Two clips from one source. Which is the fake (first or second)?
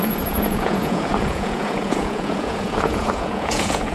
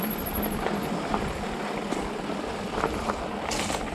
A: first